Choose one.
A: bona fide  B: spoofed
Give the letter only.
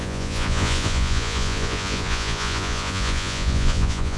B